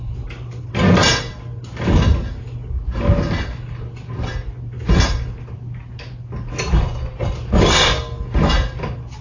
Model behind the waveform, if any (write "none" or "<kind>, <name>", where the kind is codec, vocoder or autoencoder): none